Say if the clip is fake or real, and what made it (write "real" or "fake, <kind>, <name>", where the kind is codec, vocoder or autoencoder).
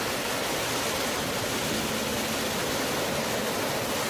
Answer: real